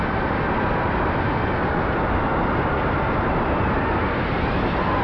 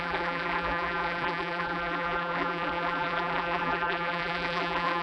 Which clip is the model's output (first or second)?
second